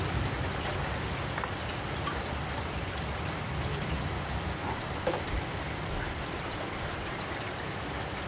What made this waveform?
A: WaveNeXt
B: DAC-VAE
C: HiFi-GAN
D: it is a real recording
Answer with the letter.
D